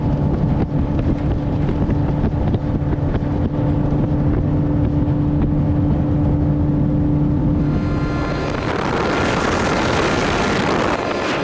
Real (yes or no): yes